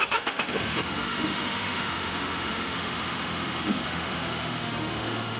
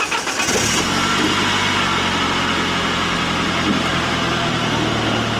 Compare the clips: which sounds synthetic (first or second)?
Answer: first